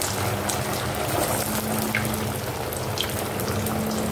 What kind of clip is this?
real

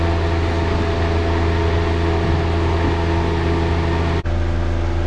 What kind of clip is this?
real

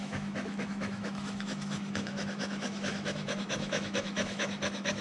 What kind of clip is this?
fake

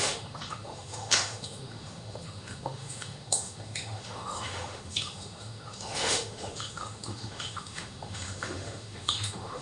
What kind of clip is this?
fake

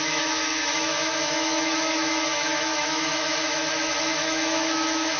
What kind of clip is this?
fake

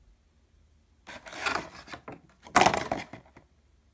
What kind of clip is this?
real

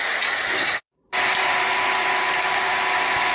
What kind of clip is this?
real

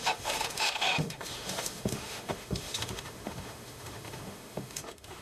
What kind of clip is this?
fake